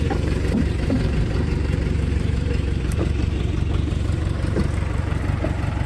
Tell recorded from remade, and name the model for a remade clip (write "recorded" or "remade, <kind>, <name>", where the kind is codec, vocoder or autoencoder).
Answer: remade, vocoder, BigVGAN v2